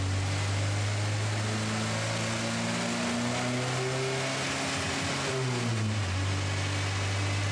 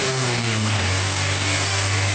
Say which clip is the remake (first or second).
second